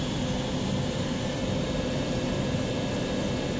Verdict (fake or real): real